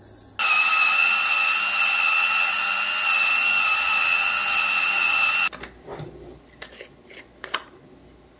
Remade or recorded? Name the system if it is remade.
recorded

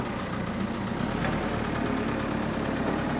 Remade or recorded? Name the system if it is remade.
recorded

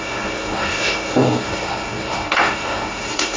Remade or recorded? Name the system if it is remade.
remade, codec, SNAC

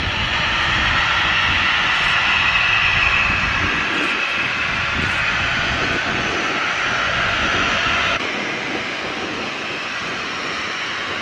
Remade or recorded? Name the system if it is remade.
remade, vocoder, Vocos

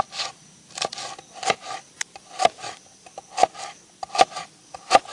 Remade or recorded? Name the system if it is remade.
recorded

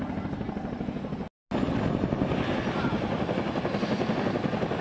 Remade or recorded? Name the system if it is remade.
recorded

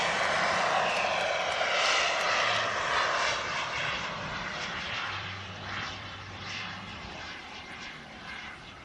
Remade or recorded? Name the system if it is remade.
remade, vocoder, BigVGAN v2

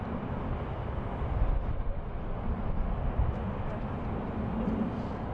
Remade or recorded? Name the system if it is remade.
recorded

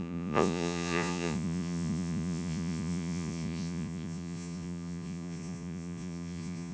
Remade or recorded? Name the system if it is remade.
remade, vocoder, Vocos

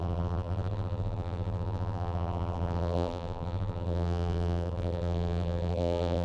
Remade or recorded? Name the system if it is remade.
remade, vocoder, BigVGAN v2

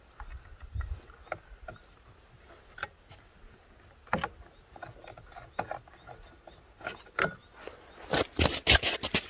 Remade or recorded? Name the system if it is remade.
recorded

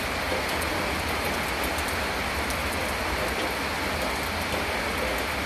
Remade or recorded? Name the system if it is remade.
recorded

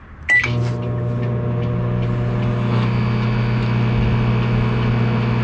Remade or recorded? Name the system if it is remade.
recorded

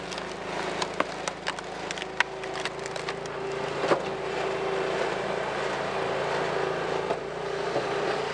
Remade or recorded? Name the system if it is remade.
recorded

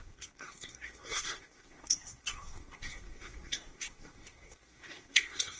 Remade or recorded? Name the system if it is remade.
remade, codec, SNAC